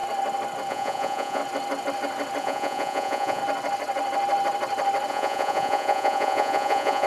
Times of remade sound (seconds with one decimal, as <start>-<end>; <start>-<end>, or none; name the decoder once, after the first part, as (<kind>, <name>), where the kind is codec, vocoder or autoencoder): 0.7-1.4 (vocoder, Vocos); 2.4-3.4; 5.1-7.1